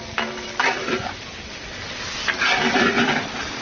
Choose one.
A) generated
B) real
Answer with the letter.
A